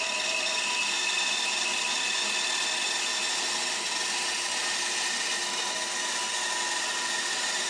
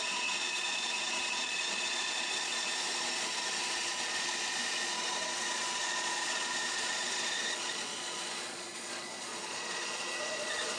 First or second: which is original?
first